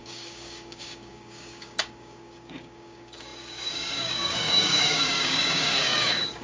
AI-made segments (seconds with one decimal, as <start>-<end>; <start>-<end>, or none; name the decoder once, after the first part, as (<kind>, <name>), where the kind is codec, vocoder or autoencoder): 0.0-6.4 (codec, DAC)